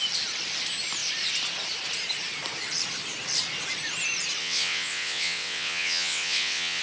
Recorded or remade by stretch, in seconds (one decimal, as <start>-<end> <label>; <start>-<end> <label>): 0.0-4.4 recorded; 4.4-6.8 remade